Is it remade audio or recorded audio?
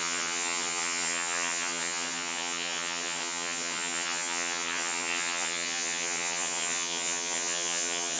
remade